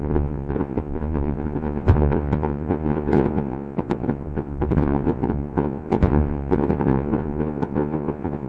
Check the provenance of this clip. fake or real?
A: fake